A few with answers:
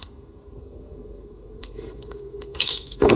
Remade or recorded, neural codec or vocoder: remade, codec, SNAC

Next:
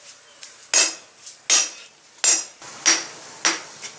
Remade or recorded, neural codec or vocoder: recorded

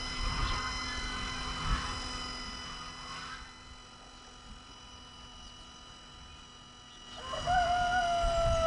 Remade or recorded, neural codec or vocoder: recorded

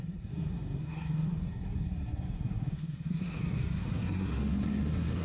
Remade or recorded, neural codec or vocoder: remade, codec, SNAC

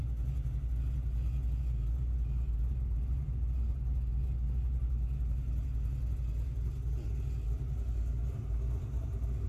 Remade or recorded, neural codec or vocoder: recorded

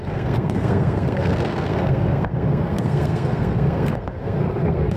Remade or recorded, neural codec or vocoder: remade, codec, SNAC